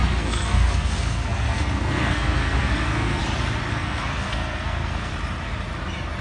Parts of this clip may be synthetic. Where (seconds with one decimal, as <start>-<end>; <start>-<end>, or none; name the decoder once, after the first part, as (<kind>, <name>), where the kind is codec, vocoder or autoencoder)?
0.0-3.2 (codec, SNAC); 3.7-5.1